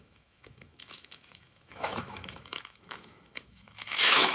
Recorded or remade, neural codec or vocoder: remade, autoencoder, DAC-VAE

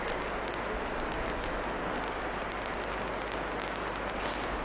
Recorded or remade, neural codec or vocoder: recorded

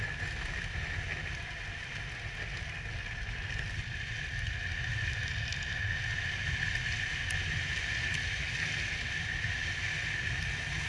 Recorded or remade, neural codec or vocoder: recorded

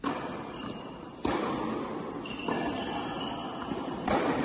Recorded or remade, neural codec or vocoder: recorded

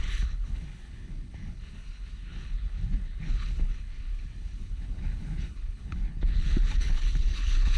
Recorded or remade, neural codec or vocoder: remade, codec, HILCodec